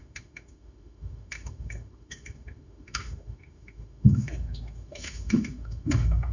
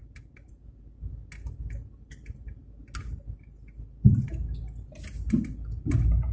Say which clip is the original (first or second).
second